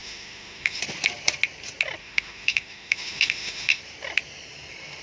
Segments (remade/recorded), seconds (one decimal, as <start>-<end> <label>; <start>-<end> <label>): 0.0-0.8 remade; 0.8-2.0 recorded; 2.0-3.8 remade; 3.8-5.0 recorded

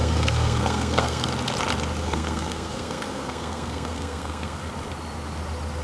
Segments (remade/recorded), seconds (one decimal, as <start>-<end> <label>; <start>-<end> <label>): 0.0-1.3 remade; 1.3-2.0 recorded; 2.0-4.7 remade; 4.7-5.8 recorded

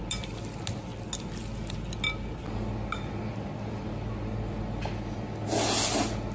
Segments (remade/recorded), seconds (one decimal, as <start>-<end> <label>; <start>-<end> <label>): 0.0-6.3 recorded

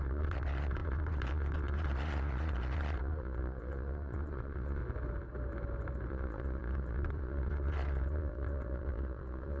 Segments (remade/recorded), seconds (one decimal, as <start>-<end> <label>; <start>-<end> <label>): 0.0-4.8 remade; 4.8-6.1 recorded; 6.1-9.6 remade

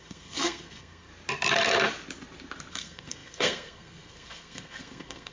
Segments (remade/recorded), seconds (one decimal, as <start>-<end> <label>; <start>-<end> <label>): 0.0-1.1 remade; 1.1-2.7 recorded; 2.7-5.3 remade